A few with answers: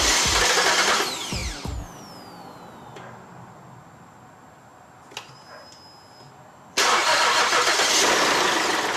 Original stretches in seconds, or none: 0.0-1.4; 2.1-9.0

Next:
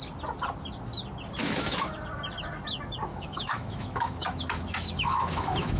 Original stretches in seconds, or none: 0.0-1.4; 1.9-3.1

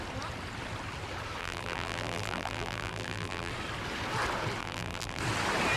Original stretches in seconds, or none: 0.0-1.4; 3.5-4.6; 5.2-5.8

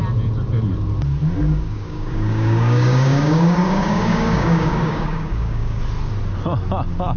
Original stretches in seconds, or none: 0.0-1.5; 5.8-7.2

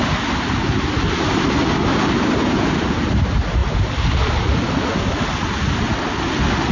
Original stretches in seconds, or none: 0.0-6.7

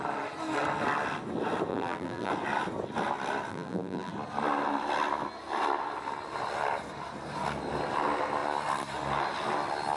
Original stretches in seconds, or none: 0.0-1.7; 2.3-3.5; 4.1-10.0

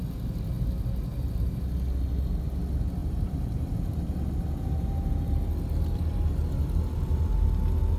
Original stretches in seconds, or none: 0.0-1.1; 1.7-3.0; 5.1-8.0

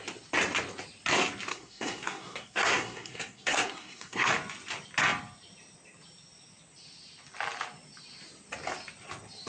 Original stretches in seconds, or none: 0.0-1.5; 4.3-9.5